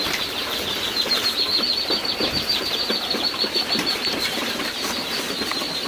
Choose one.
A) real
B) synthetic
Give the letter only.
B